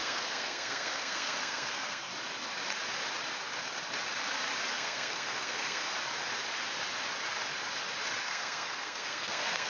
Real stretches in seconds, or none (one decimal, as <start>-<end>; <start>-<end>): 2.1-4.7; 5.9-8.2